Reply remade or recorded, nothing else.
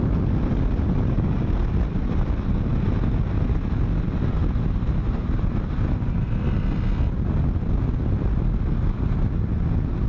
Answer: recorded